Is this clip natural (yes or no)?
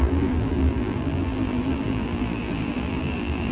no